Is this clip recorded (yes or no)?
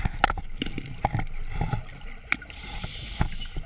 yes